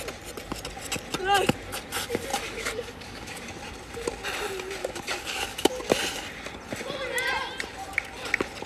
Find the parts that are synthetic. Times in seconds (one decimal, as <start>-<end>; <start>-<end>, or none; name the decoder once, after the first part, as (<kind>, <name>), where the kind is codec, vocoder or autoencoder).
2.3-3.5 (codec, DAC); 4.8-5.7